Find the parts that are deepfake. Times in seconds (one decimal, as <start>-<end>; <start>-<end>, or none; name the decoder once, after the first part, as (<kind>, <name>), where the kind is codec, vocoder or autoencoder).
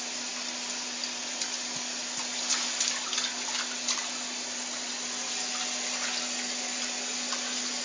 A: none